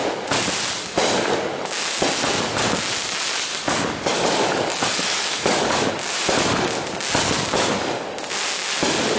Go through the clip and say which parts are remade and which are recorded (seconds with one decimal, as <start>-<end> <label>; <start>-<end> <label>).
0.0-3.5 recorded; 3.5-5.9 remade; 5.9-9.2 recorded